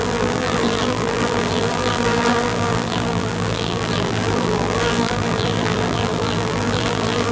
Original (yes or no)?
no